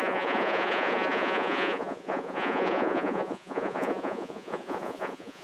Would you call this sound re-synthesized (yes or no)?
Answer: yes